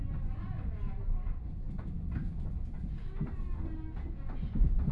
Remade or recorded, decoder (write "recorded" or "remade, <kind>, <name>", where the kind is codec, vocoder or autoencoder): recorded